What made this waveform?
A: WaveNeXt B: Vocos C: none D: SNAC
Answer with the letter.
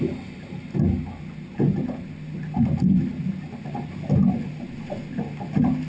C